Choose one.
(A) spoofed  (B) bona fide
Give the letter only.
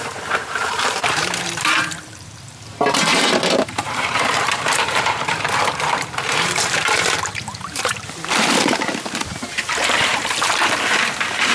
A